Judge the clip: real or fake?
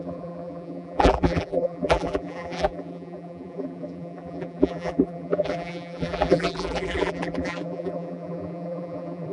fake